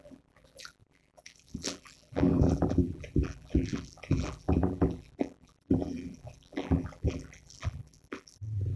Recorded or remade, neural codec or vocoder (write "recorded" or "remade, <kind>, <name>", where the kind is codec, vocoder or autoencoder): remade, vocoder, BigVGAN v2